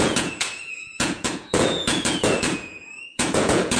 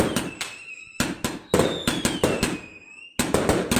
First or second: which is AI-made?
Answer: first